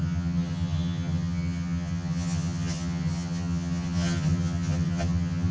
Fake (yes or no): yes